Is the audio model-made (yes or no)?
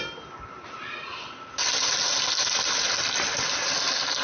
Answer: no